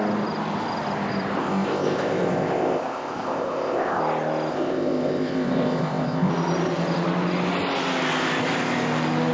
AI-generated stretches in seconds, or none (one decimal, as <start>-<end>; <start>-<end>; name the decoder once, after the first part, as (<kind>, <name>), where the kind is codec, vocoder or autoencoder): 1.4-4.0 (codec, ZipCodec); 4.5-6.3